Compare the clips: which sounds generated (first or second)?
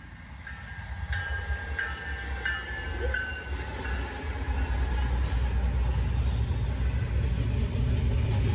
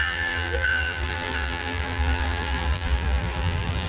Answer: second